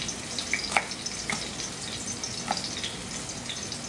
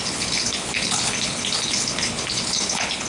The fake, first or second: second